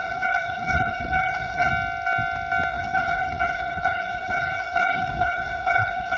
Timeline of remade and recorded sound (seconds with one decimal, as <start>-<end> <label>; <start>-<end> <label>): 0.0-1.7 remade; 1.7-2.7 recorded; 2.7-6.2 remade